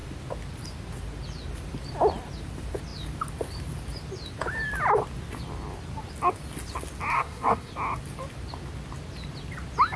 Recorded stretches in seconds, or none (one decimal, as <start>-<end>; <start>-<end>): 0.0-7.1; 7.7-10.0